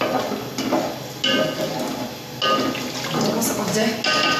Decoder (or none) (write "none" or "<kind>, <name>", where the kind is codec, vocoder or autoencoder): none